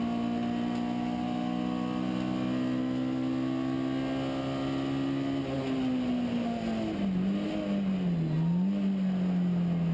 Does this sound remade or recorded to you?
recorded